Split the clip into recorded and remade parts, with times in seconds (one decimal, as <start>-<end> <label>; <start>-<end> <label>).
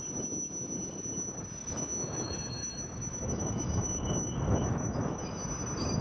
0.0-1.6 recorded; 1.6-5.2 remade; 5.2-6.0 recorded